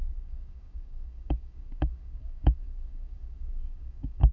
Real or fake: fake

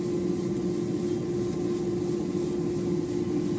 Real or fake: real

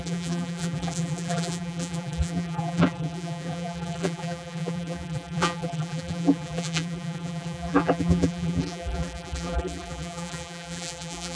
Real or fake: fake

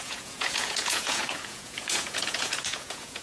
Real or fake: fake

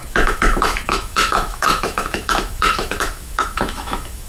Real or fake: fake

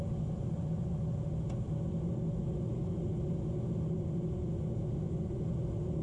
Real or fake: real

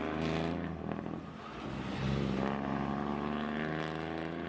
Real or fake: real